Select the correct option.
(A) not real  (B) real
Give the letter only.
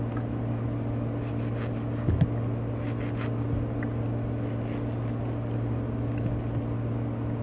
B